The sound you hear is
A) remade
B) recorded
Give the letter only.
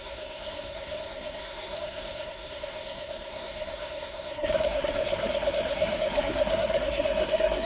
A